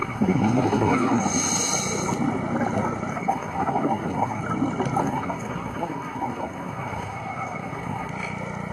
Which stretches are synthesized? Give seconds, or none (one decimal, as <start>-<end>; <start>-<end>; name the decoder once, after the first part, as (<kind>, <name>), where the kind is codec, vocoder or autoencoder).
0.0-1.2 (codec, SNAC); 3.1-4.4; 5.0-8.1